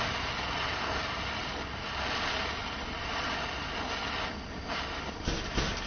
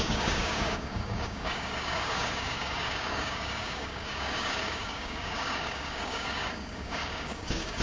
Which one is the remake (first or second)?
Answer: second